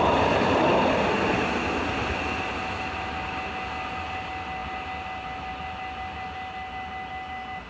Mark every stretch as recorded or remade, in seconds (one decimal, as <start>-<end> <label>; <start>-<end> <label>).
0.0-7.7 recorded